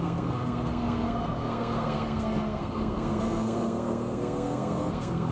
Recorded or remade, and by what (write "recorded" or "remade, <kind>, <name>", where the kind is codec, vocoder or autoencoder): remade, codec, SNAC